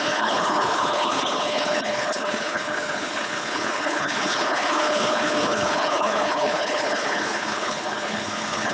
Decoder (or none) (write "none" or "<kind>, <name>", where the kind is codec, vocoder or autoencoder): codec, HILCodec